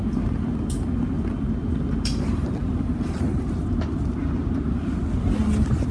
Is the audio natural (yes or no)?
yes